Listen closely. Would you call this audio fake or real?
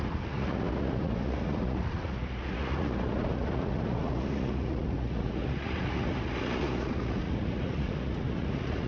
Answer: fake